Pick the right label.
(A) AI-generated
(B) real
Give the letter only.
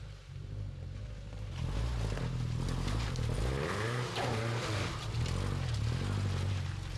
B